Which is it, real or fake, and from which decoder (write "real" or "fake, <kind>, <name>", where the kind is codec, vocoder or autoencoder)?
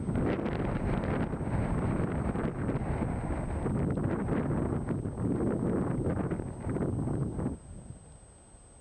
real